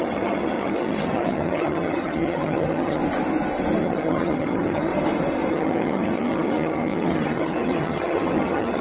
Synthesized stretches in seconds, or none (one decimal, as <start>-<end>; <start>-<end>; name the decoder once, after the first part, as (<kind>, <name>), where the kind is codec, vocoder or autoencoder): 0.0-3.0 (vocoder, HiFi-GAN); 3.8-4.9; 5.5-8.8